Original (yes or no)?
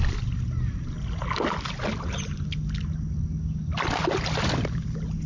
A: yes